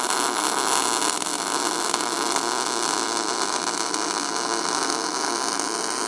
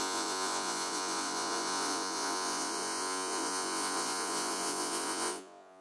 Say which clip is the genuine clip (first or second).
first